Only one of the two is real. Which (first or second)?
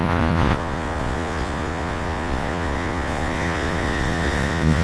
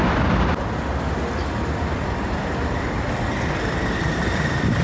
second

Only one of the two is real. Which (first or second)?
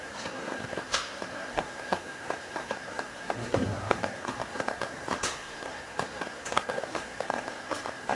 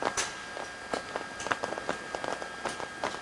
second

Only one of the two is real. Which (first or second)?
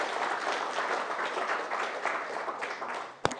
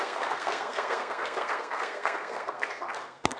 first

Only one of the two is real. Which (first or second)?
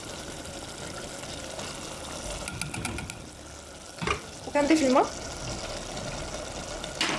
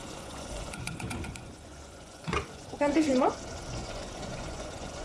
first